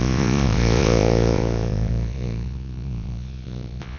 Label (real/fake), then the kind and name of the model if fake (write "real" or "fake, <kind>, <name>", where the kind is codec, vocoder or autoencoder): fake, vocoder, Vocos